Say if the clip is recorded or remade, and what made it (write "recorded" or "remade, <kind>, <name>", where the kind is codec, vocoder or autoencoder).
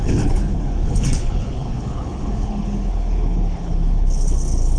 remade, codec, HILCodec